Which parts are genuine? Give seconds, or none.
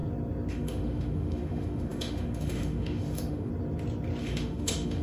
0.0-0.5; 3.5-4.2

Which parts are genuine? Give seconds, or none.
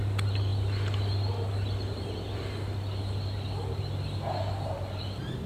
0.0-5.5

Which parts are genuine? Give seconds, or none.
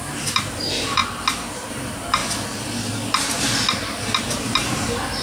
1.0-1.7; 2.2-4.4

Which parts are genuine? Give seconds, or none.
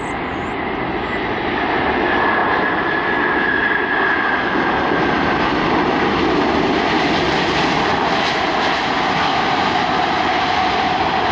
0.0-11.3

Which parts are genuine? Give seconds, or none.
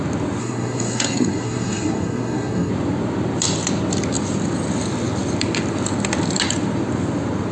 0.0-0.4; 2.7-7.5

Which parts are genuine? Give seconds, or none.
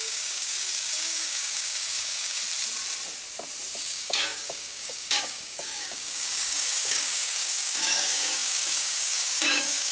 2.4-3.8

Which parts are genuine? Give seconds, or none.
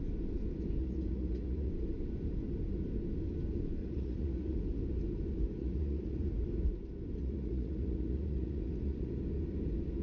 0.0-0.8; 1.7-3.8; 4.6-5.6; 6.3-7.2; 9.1-10.0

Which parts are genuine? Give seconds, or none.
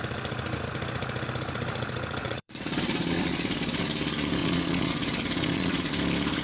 0.0-2.2; 3.8-4.4; 5.9-6.4